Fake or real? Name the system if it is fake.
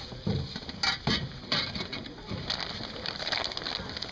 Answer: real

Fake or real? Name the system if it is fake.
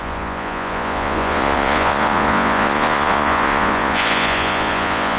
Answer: fake, vocoder, Vocos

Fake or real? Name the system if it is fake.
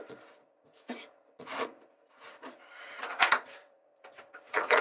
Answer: fake, vocoder, Vocos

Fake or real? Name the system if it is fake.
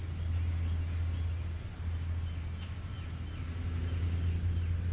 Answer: real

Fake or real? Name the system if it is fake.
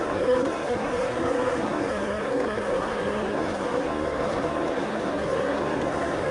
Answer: fake, codec, SNAC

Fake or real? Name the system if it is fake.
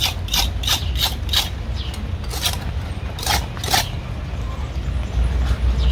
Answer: real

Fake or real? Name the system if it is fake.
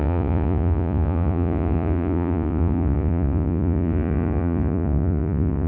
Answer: fake, vocoder, Vocos